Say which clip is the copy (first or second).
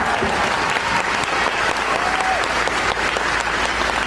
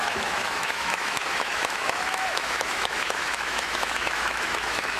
second